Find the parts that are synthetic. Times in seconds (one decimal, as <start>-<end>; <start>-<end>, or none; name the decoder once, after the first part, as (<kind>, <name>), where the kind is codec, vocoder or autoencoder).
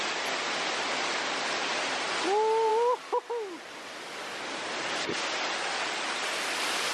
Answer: none